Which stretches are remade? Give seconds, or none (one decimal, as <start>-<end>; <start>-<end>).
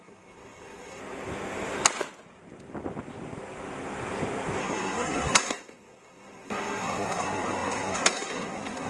0.0-1.0; 4.6-8.9